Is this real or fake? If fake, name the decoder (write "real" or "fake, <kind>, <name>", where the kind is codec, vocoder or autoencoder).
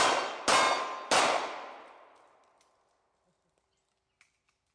real